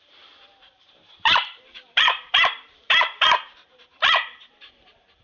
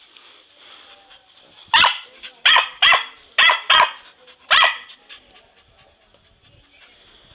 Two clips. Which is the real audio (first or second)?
second